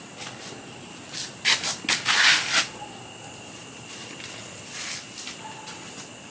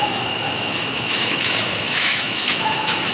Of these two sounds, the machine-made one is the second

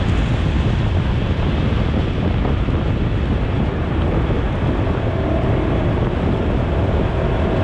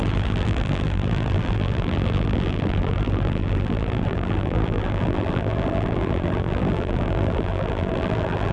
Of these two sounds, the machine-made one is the second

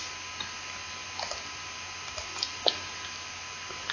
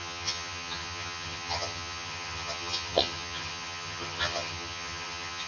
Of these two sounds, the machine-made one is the second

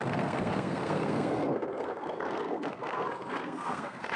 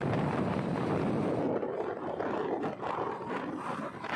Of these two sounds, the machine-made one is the first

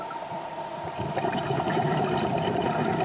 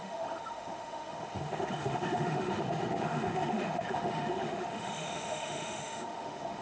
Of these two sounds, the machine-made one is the second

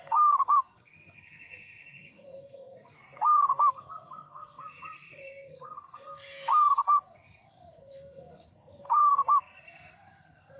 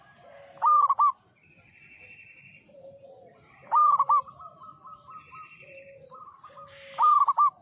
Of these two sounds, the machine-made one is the first